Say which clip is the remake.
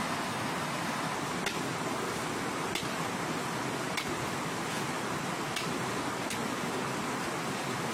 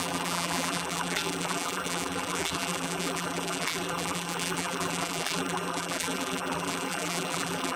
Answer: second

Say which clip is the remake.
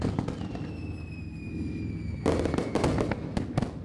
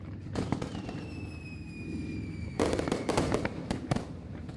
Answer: second